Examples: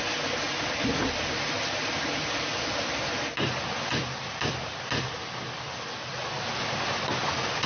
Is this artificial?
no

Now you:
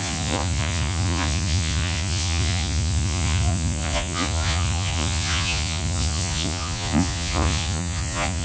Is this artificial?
yes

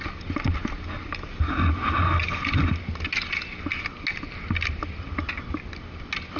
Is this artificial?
no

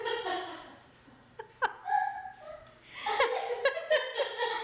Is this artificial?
no